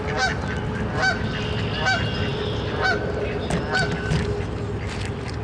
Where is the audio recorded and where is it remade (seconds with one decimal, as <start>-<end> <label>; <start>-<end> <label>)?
0.0-5.4 recorded